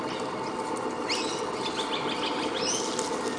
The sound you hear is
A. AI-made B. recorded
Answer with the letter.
B